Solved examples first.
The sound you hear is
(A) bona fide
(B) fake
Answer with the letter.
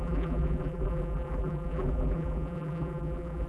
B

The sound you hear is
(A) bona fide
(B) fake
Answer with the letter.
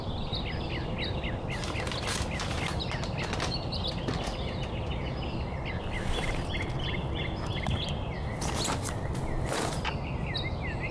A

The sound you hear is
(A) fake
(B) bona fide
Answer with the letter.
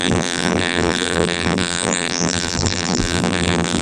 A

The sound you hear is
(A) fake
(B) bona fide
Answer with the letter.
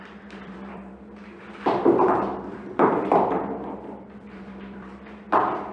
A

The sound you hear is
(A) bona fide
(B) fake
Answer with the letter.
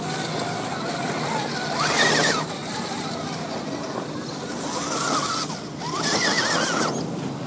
A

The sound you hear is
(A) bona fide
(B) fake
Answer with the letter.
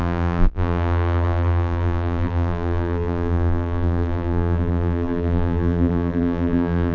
B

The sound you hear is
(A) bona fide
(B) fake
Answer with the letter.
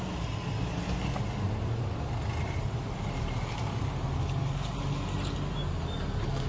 A